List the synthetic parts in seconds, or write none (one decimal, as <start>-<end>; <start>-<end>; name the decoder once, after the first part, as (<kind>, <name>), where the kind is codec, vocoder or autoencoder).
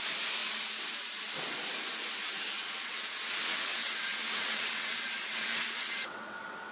2.6-6.7 (vocoder, WaveNeXt)